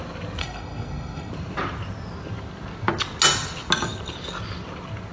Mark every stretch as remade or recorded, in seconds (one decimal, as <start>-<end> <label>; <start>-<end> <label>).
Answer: 0.0-0.4 recorded; 0.4-1.3 remade; 1.3-5.1 recorded